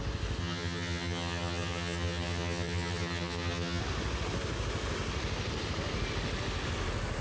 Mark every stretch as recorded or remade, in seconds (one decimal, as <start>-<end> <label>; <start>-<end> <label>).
0.0-0.4 recorded; 0.4-3.8 remade; 3.8-7.2 recorded